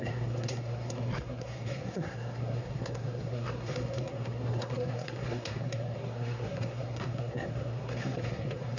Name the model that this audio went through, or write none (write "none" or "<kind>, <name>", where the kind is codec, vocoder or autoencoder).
codec, SNAC